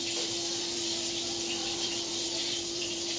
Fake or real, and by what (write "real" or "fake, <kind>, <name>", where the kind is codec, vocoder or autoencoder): fake, vocoder, BigVGAN v2